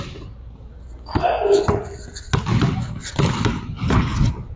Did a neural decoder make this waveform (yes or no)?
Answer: no